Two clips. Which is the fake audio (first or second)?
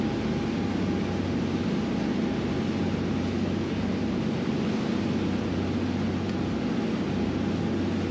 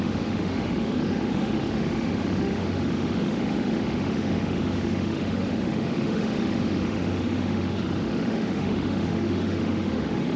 second